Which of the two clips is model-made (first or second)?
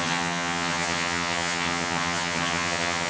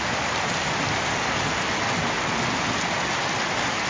first